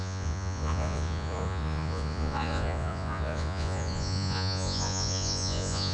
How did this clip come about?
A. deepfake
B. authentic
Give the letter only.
A